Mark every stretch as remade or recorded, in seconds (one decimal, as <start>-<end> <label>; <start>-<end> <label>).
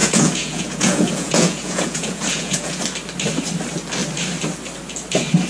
0.0-2.8 remade; 2.8-5.5 recorded